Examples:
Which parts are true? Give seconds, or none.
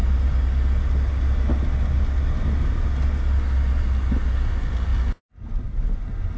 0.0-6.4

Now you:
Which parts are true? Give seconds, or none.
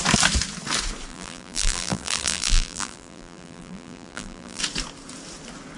0.0-1.1; 4.6-5.8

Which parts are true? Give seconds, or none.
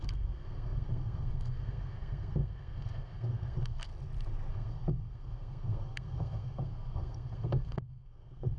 3.9-4.5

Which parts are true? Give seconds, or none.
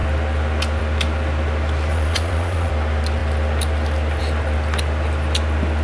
0.0-1.9; 2.7-5.8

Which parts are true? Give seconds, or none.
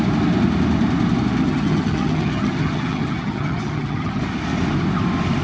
0.0-1.4; 4.2-5.4